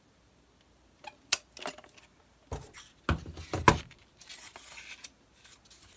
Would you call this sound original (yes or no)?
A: yes